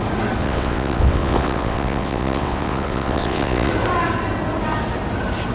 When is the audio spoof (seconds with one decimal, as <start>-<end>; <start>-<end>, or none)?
0.4-3.7